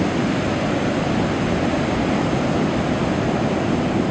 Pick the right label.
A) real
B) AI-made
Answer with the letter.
A